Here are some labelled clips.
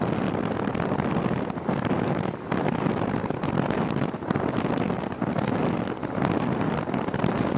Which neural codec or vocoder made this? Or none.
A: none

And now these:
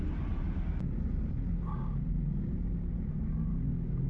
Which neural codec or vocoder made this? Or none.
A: none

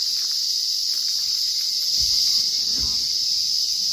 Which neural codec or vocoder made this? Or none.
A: none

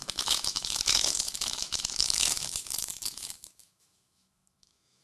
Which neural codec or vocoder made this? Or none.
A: autoencoder, DAC-VAE